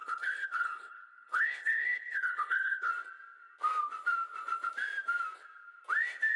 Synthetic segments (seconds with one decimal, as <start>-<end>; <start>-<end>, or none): 0.0-2.9